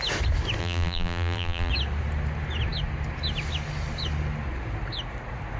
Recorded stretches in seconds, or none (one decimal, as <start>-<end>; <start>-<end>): 0.0-0.6; 1.7-5.6